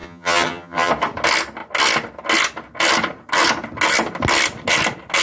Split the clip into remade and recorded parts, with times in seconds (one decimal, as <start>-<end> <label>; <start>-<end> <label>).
0.0-0.9 remade; 0.9-5.2 recorded